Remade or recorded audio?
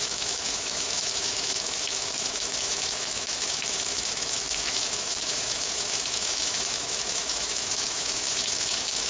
remade